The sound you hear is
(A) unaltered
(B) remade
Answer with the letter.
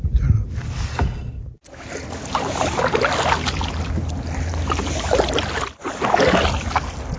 A